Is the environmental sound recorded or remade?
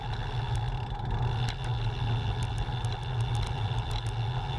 recorded